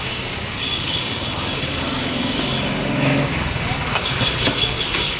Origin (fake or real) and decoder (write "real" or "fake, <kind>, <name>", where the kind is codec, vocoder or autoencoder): fake, codec, DAC